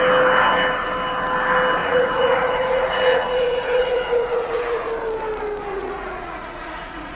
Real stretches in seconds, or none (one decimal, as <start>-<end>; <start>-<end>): 0.0-1.8; 4.9-5.7